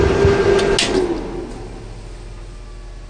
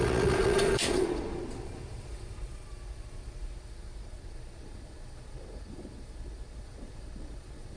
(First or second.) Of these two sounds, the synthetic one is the second